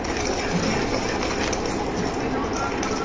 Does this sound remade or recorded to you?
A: recorded